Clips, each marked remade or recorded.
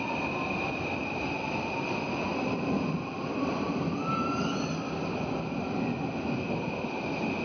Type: recorded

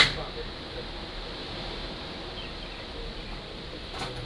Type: recorded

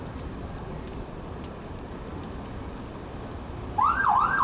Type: recorded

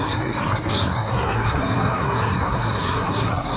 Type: remade